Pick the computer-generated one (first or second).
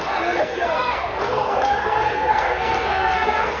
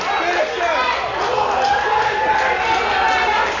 first